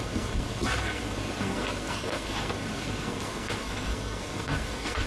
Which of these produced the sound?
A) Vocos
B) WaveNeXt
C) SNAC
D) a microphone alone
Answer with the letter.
C